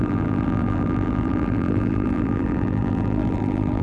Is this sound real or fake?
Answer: fake